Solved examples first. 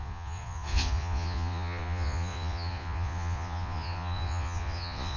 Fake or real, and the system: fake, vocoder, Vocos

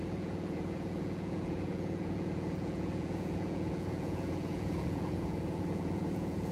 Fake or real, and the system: fake, vocoder, Vocos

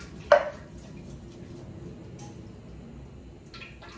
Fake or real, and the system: real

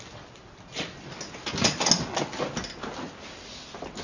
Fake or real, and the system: real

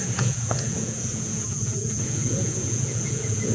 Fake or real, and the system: fake, vocoder, Vocos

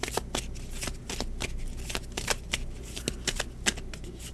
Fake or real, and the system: real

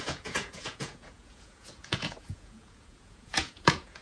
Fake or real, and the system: fake, vocoder, Vocos